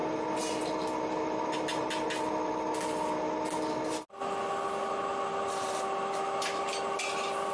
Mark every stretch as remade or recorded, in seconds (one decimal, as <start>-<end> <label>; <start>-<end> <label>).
0.0-7.5 recorded